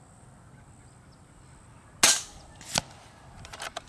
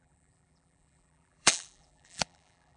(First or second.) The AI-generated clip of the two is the second